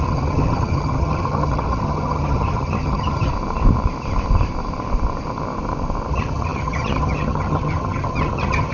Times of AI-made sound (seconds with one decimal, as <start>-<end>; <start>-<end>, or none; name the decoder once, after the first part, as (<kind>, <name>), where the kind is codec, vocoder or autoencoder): 0.0-3.3 (vocoder, HiFi-GAN); 6.1-8.7